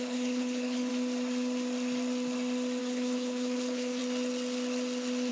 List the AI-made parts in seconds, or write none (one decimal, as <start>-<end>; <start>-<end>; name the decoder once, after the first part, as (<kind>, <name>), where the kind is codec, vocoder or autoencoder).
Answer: 0.0-0.9 (codec, HILCodec); 2.8-4.0